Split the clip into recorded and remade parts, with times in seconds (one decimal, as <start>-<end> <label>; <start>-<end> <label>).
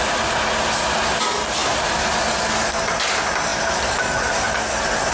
0.0-5.1 recorded